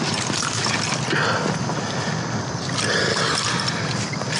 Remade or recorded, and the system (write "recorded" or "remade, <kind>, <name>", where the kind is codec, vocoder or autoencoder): recorded